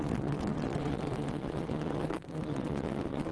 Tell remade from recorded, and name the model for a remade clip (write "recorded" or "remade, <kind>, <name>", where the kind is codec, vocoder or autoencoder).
remade, vocoder, WaveNeXt